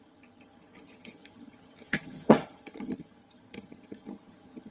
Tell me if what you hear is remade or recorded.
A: remade